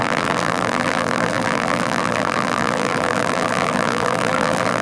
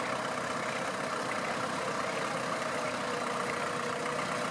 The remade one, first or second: first